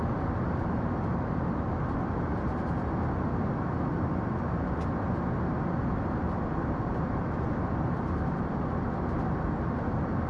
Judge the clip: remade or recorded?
recorded